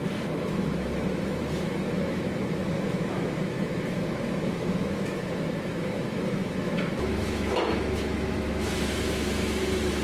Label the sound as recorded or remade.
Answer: remade